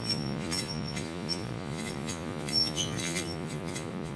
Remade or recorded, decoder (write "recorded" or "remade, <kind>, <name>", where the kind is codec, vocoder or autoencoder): remade, vocoder, Vocos